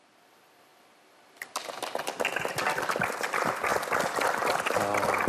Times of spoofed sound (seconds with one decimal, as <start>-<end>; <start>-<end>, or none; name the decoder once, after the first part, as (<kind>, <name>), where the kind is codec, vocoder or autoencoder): 0.0-3.7 (vocoder, BigVGAN v2)